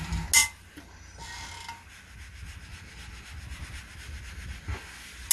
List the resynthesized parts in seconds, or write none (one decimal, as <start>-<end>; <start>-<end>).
none